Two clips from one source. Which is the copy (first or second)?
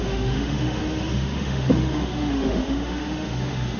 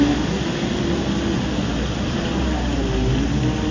first